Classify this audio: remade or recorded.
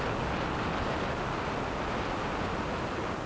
recorded